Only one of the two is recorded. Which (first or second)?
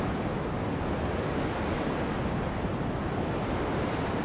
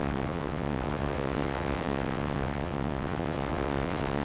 first